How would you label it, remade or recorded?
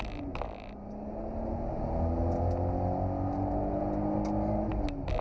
recorded